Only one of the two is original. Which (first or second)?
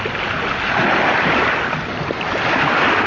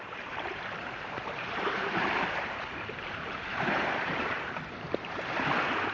first